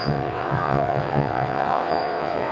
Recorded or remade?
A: remade